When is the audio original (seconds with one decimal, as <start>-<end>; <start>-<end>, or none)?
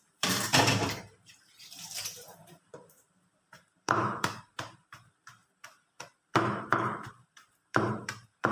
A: 5.4-6.4